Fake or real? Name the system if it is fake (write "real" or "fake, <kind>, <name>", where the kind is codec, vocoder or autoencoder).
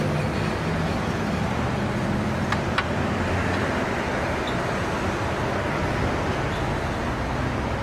real